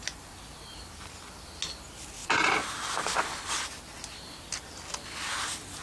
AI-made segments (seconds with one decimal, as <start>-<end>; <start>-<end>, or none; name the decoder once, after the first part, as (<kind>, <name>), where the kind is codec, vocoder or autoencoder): 2.2-3.8 (vocoder, BigVGAN v2)